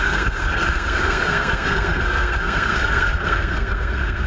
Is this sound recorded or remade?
remade